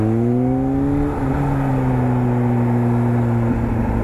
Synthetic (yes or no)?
no